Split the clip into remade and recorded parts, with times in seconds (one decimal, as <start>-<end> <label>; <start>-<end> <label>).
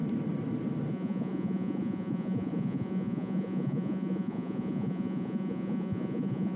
0.0-0.9 recorded; 0.9-6.6 remade